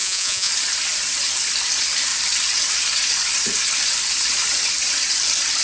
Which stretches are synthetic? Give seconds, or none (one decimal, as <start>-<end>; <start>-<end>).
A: 0.0-0.5